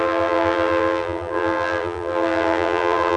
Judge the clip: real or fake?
fake